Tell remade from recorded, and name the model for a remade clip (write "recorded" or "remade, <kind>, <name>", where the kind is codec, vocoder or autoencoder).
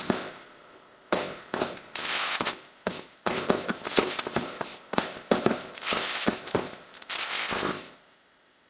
remade, codec, ZipCodec